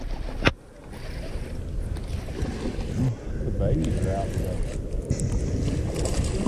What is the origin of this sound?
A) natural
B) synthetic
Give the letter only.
A